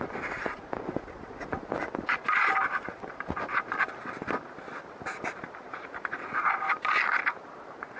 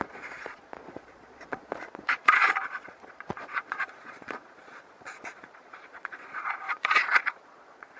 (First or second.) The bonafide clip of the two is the first